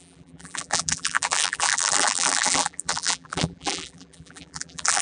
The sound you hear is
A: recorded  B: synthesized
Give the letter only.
B